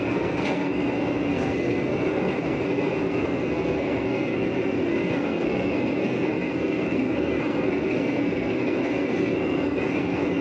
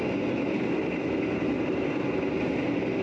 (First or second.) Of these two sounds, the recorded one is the second